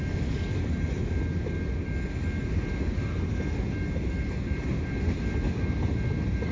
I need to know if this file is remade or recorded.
recorded